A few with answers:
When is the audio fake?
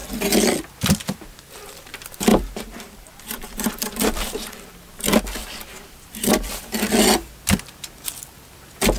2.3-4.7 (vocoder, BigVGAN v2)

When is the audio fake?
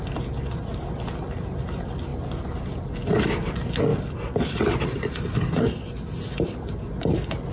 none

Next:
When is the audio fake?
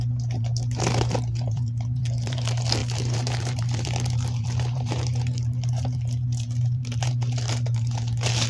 0.0-8.5 (vocoder, BigVGAN v2)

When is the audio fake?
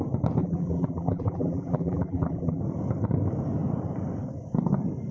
0.4-2.6 (vocoder, BigVGAN v2)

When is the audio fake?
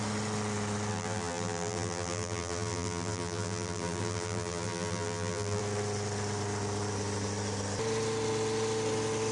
0.9-5.6 (vocoder, BigVGAN v2)